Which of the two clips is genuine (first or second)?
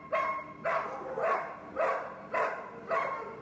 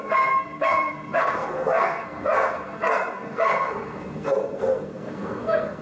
first